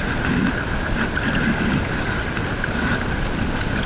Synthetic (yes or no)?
no